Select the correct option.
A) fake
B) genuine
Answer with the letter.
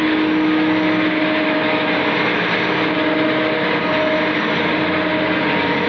B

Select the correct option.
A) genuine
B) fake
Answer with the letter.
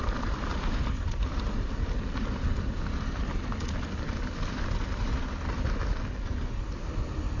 A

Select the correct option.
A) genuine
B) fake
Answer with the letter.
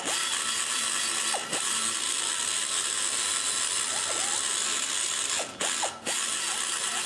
A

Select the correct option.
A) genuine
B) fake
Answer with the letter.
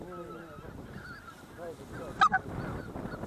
A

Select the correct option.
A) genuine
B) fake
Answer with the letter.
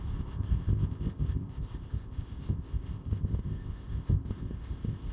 B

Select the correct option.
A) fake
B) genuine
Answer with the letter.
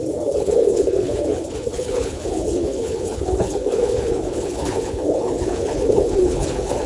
A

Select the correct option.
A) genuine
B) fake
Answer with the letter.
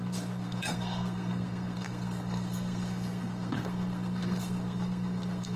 B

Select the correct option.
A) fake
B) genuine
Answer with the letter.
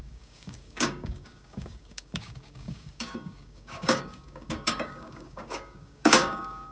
A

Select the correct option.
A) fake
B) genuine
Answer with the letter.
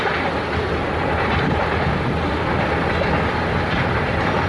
B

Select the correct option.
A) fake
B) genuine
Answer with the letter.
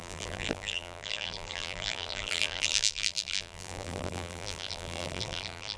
A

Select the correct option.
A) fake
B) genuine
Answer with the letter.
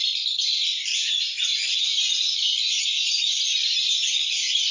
B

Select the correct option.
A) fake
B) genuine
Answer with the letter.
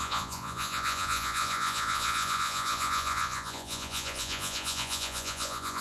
A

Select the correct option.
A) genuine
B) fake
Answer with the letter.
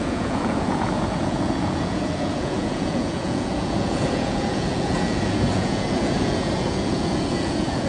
B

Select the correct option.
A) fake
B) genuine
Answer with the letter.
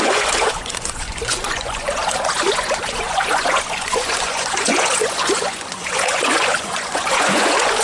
A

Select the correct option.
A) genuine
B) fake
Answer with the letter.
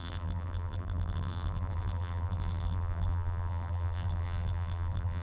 B